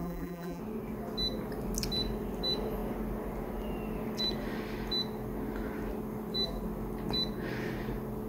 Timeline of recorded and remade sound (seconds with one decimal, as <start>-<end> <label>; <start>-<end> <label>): 0.0-0.6 remade; 0.6-8.3 recorded